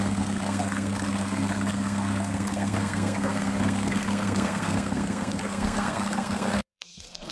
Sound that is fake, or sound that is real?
fake